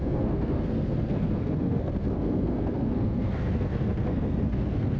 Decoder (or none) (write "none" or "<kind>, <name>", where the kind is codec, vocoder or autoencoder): codec, SNAC